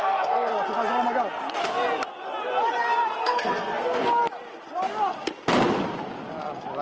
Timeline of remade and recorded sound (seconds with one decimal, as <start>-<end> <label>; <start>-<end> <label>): 0.0-0.5 remade; 0.5-3.2 recorded; 3.2-4.0 remade; 4.0-6.8 recorded